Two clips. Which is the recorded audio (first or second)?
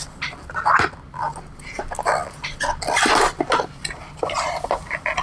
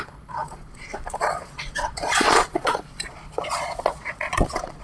first